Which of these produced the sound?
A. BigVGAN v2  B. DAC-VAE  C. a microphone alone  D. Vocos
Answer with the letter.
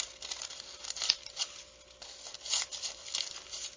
C